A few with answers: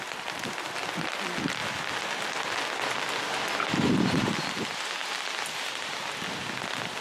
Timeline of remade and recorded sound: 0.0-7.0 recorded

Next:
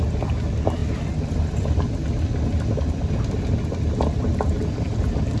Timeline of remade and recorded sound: 0.0-5.4 recorded